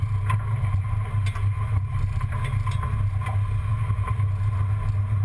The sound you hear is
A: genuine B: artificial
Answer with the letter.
A